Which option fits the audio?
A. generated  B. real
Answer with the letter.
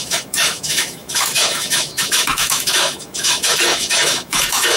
A